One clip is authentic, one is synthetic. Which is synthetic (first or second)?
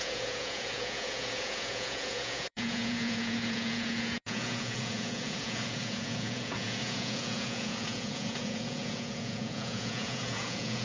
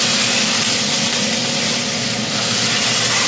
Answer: first